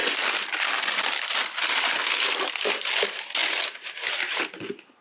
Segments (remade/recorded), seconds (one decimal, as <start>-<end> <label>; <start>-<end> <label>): 0.0-5.0 recorded